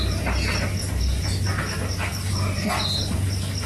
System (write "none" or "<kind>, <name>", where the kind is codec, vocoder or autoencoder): none